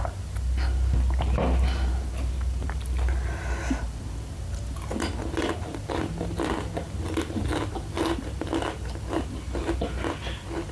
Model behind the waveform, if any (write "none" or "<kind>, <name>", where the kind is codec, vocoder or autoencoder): none